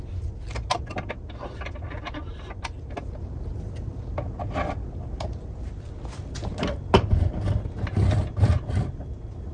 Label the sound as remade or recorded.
recorded